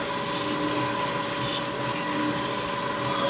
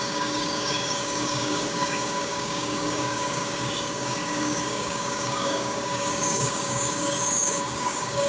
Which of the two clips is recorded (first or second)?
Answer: first